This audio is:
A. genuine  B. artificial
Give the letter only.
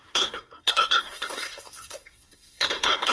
B